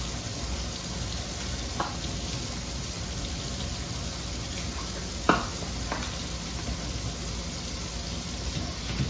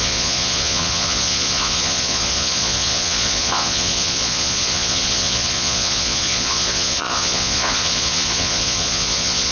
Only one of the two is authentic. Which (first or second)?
first